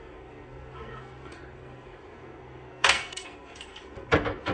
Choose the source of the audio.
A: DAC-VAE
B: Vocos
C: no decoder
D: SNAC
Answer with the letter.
D